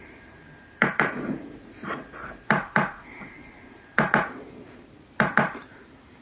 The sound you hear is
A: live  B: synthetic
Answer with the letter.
B